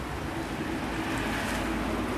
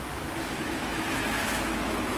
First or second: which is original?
first